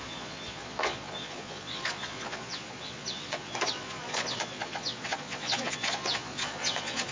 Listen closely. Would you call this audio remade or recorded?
remade